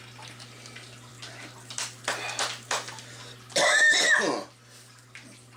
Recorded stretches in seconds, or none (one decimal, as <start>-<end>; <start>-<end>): 0.0-5.6